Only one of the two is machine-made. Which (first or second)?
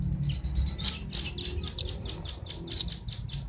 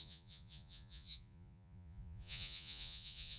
second